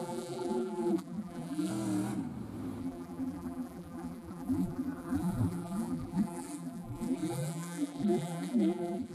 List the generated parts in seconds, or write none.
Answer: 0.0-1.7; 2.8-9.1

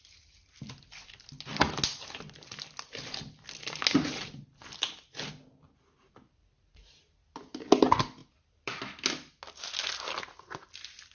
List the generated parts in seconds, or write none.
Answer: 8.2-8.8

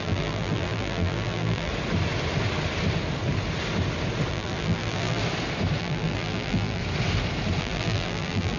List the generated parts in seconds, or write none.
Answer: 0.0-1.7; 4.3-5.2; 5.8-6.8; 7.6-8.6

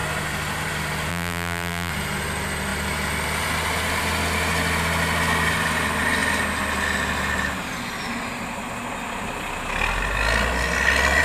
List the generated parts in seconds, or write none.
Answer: 1.1-1.9

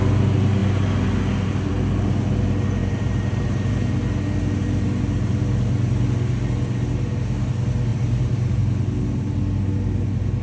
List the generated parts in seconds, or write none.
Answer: 2.8-3.7; 7.9-8.6

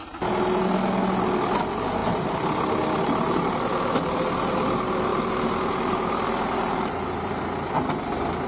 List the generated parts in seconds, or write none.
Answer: 5.1-7.7

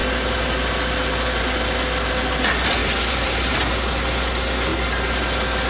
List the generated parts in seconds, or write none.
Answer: 2.8-3.5

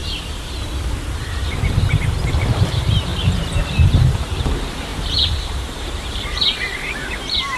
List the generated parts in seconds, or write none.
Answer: 2.3-3.1; 3.6-7.6